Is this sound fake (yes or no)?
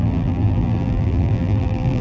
yes